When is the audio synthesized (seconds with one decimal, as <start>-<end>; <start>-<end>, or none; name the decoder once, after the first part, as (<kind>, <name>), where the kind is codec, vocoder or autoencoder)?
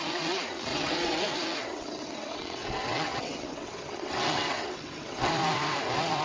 0.7-1.2 (vocoder, WaveNeXt); 1.6-5.3